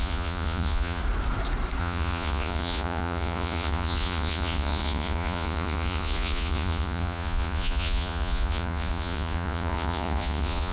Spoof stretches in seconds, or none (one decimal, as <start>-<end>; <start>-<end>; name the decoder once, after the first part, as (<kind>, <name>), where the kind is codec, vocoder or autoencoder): 0.0-1.0 (vocoder, Vocos); 1.8-10.7